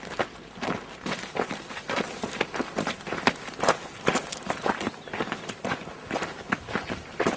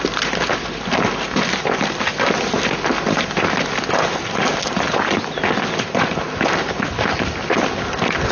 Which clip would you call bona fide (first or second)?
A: second